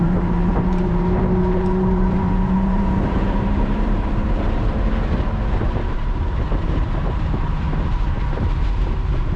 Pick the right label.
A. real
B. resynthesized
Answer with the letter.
B